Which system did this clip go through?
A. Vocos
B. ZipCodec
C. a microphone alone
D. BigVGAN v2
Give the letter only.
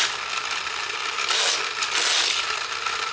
C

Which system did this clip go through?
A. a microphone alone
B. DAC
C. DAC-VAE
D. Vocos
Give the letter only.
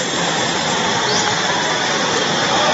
A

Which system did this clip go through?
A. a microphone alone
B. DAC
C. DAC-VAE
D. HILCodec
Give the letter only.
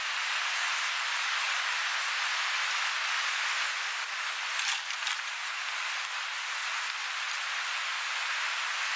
A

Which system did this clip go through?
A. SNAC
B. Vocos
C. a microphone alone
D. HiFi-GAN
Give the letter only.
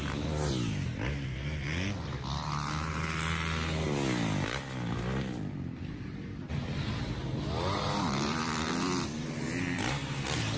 C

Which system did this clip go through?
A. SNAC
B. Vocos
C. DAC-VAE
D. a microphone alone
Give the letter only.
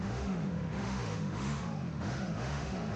C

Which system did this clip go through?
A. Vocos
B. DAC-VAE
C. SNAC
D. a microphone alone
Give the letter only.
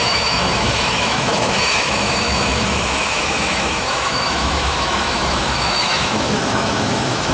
B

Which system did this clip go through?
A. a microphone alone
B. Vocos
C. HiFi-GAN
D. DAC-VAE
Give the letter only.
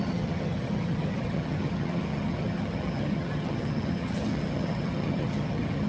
C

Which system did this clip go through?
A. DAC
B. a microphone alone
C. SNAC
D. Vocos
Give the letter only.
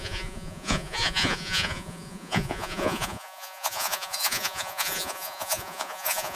D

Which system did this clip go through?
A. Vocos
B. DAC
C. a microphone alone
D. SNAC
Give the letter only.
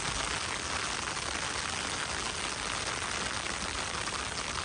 C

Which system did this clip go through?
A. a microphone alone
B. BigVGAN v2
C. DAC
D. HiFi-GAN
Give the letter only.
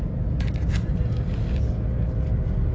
A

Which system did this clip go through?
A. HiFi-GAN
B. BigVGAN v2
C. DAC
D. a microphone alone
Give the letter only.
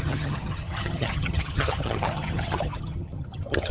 A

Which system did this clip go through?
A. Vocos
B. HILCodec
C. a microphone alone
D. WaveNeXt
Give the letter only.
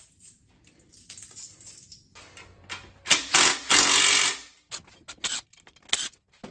C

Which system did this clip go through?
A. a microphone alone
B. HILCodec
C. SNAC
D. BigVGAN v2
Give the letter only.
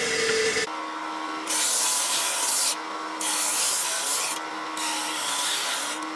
A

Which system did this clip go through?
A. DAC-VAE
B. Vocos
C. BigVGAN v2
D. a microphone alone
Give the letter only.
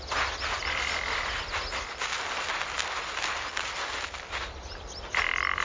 D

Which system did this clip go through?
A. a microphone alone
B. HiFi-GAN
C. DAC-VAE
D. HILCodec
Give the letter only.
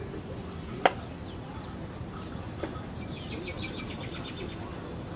A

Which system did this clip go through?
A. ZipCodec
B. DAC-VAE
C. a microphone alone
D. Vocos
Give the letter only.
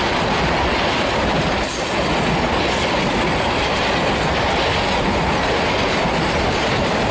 C